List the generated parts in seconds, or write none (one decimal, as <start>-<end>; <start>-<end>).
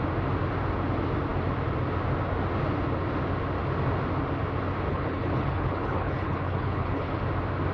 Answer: 4.9-7.2